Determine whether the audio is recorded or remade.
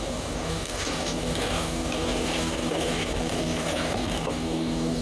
remade